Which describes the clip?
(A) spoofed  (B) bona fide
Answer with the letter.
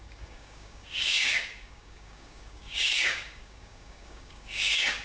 A